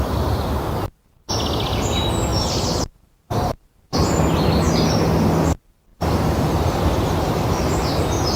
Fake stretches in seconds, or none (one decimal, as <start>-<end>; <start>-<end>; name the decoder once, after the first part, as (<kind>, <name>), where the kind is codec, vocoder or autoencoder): 2.3-3.7 (vocoder, BigVGAN v2); 5.9-6.5